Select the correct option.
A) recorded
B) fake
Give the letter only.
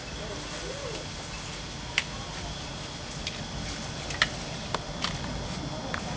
A